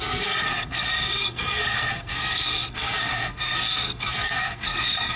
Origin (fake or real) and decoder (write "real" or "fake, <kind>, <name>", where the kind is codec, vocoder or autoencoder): fake, codec, SNAC